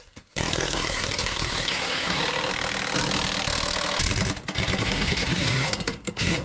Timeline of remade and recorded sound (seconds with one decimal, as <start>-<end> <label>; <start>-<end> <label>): 0.0-2.2 remade; 2.2-4.8 recorded; 4.8-6.4 remade